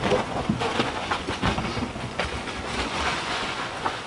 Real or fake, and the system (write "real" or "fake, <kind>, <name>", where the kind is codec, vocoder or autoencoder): fake, vocoder, Vocos